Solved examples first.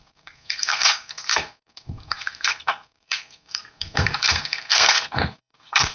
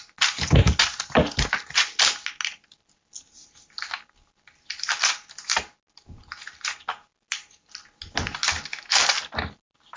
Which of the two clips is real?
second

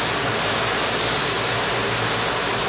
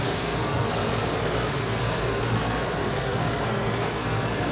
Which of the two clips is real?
first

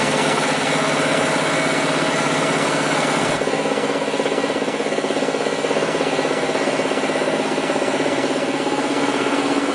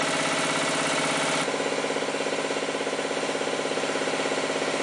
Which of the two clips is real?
second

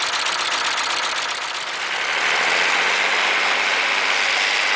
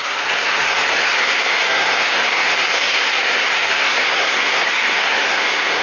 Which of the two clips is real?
first